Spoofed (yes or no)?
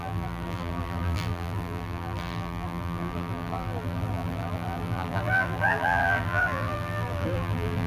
yes